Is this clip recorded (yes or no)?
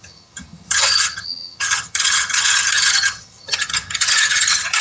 no